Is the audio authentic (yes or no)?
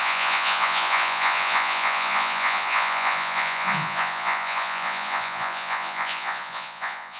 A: no